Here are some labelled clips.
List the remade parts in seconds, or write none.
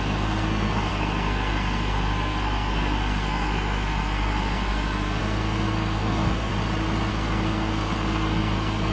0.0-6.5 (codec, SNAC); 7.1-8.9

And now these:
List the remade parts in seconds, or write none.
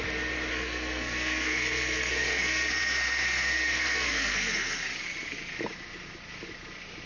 0.5-4.8 (codec, SNAC)